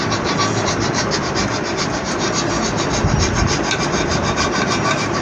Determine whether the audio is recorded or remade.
recorded